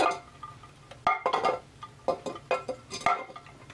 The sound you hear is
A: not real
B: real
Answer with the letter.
B